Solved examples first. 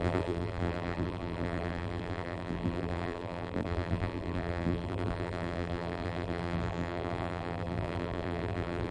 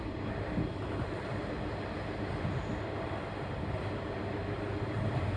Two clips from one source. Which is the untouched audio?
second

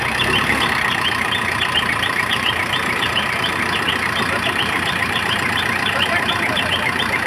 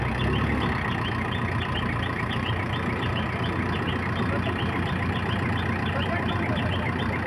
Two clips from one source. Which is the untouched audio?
second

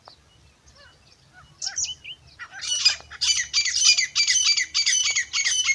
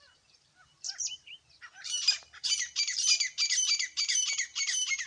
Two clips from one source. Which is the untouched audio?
first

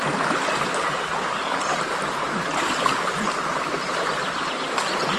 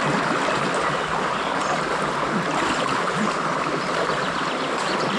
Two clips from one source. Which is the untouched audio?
first